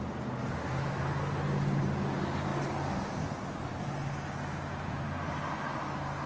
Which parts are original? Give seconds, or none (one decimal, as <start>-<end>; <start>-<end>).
0.0-6.3